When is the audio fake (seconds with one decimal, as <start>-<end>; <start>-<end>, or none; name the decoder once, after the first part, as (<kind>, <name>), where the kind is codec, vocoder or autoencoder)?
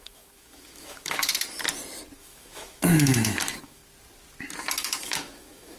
0.0-1.3 (autoencoder, DAC-VAE); 2.2-3.8; 5.0-5.8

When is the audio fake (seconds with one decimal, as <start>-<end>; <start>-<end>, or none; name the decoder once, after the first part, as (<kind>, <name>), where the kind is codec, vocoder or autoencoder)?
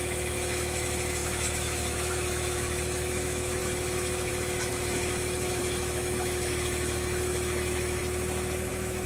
0.0-8.0 (autoencoder, DAC-VAE); 8.7-9.1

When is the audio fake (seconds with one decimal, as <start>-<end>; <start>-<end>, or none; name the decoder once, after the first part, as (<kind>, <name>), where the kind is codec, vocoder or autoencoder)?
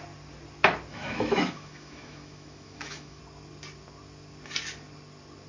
0.9-3.2 (autoencoder, DAC-VAE)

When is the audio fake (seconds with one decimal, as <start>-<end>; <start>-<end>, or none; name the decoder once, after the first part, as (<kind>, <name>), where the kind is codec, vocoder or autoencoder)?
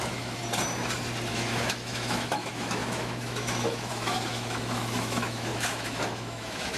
0.0-0.4 (autoencoder, DAC-VAE); 1.3-6.8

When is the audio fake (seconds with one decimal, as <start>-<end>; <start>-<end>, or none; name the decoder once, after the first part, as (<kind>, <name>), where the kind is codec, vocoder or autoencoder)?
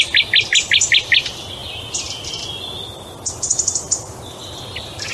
none